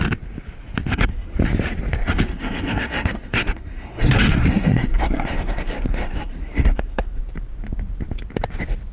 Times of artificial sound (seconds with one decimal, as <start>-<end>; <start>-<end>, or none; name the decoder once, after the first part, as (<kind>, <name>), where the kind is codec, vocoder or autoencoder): 0.9-1.4 (codec, SNAC); 2.0-7.2